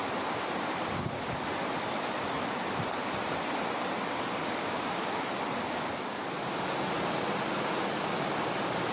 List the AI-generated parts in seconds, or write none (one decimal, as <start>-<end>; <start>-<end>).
none